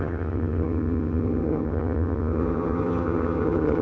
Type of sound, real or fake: fake